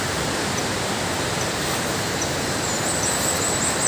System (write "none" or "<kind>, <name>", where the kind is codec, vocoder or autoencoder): vocoder, BigVGAN v2